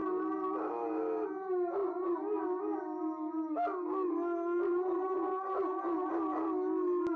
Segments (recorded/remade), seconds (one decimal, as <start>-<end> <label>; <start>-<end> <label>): 0.0-7.2 recorded